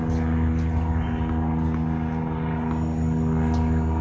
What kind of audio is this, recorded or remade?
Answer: recorded